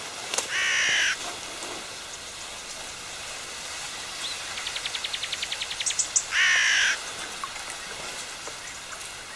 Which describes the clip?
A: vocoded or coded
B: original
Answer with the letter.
B